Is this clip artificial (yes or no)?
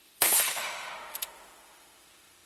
yes